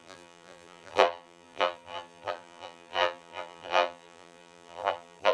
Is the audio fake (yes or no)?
yes